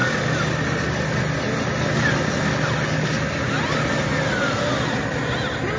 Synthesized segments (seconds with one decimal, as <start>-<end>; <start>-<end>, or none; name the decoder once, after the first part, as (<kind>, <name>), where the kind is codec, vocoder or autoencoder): none